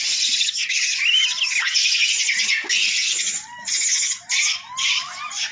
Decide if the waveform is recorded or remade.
recorded